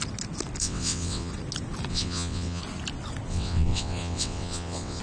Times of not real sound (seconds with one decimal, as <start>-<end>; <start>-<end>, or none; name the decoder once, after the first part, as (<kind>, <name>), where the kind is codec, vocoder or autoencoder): 0.6-1.3 (vocoder, WaveNeXt); 1.9-2.6; 3.3-5.0